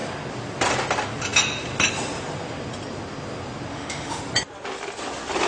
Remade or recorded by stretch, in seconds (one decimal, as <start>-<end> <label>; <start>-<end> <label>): 0.0-3.7 recorded; 3.7-4.2 remade; 4.2-5.5 recorded